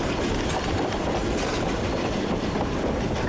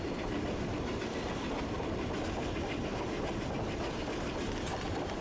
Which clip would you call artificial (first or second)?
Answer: first